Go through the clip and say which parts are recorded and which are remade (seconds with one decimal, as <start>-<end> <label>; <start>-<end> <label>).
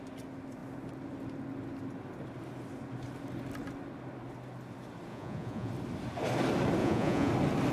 0.0-5.1 recorded; 5.1-5.7 remade; 5.7-6.8 recorded; 6.8-7.3 remade; 7.3-7.7 recorded